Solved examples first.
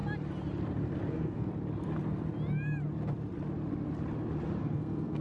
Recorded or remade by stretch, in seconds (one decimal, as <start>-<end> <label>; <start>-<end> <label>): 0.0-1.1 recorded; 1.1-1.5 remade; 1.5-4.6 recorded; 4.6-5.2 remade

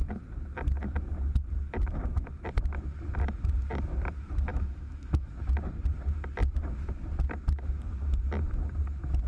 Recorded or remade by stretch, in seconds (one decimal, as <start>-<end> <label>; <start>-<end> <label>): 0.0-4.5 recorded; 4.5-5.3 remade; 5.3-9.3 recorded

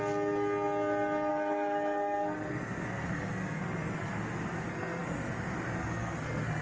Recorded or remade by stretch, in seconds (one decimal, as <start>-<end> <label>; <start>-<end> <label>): 0.0-1.3 recorded; 1.3-4.2 remade; 4.2-4.7 recorded; 4.7-5.3 remade; 5.3-5.8 recorded; 5.8-6.6 remade